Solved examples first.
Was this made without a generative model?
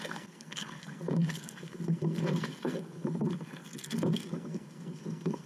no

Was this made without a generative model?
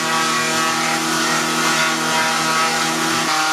yes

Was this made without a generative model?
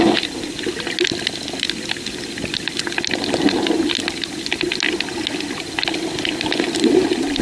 yes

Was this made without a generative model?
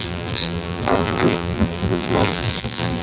no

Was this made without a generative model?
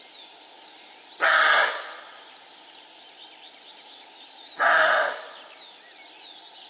yes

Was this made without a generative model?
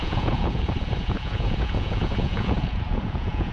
no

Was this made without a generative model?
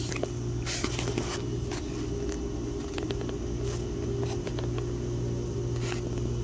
yes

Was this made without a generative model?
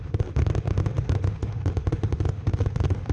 no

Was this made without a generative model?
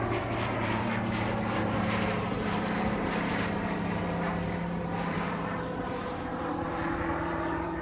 no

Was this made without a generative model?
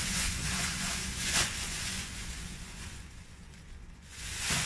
no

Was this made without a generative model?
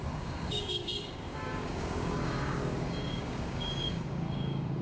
no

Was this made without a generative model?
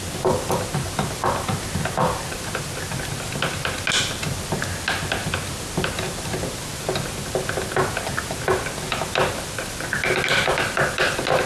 yes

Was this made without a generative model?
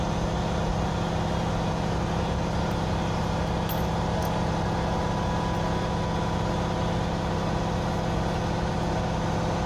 yes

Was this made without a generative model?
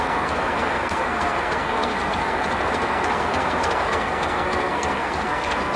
no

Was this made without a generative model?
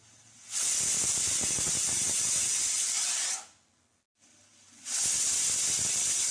yes